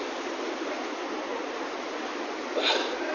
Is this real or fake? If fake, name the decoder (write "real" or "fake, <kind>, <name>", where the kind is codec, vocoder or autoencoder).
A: real